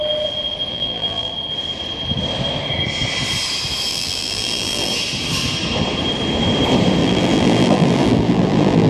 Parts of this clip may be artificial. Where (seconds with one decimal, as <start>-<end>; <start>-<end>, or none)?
0.7-1.3; 3.9-4.9; 7.0-8.9